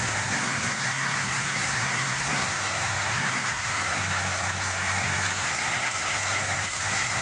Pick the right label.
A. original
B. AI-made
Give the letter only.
B